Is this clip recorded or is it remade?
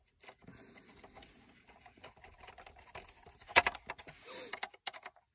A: recorded